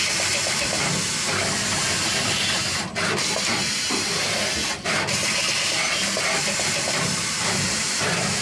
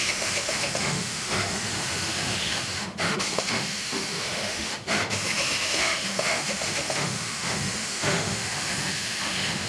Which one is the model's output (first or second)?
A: second